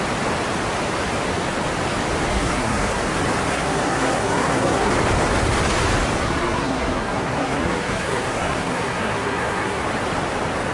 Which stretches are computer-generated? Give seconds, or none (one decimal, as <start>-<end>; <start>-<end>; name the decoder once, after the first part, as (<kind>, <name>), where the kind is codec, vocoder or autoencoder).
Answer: 2.3-3.0 (codec, SNAC); 3.5-4.9; 6.2-9.8